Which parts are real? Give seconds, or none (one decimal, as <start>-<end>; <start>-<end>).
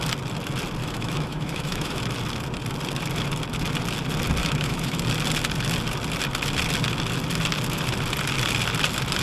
0.0-0.8; 2.0-4.4; 5.0-9.2